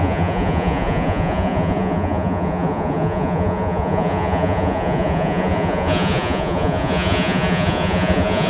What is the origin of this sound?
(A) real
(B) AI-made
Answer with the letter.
B